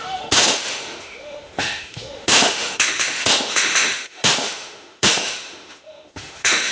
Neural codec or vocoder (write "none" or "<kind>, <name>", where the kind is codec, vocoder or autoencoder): autoencoder, DAC-VAE